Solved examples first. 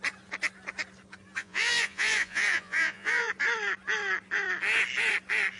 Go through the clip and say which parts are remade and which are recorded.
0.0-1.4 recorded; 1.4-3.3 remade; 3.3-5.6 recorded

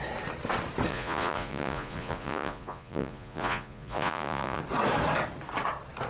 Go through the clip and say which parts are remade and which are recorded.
0.0-0.9 recorded; 0.9-4.6 remade; 4.6-6.1 recorded